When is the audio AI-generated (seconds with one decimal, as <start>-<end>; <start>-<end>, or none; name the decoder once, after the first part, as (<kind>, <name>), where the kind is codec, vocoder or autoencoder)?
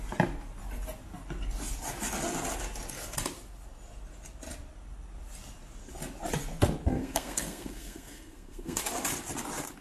6.9-8.8 (codec, SNAC)